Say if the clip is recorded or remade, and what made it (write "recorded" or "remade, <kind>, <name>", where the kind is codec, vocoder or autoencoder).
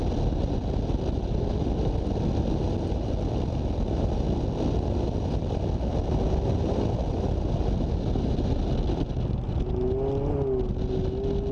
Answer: recorded